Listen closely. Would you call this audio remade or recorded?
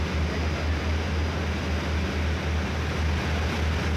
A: recorded